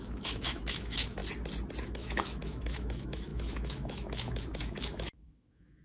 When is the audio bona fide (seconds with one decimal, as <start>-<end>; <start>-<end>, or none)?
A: 1.2-1.8